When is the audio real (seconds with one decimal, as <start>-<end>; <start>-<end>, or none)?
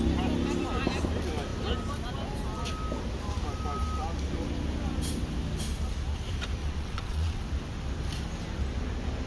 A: 0.0-6.6; 7.4-9.3